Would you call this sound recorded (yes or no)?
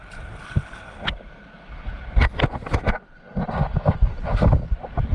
yes